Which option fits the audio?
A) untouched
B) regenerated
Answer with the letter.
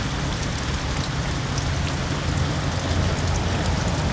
A